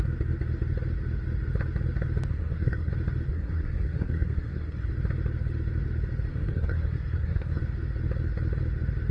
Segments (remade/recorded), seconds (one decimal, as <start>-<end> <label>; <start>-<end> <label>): 0.0-2.3 recorded; 2.3-2.9 remade; 2.9-3.3 recorded; 3.3-4.9 remade; 4.9-6.3 recorded; 6.3-7.6 remade; 7.6-9.1 recorded